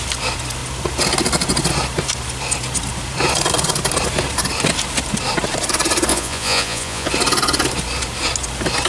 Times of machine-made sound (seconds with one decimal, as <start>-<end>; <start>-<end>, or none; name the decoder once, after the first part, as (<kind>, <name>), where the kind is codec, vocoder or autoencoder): 6.1-7.1 (vocoder, Vocos)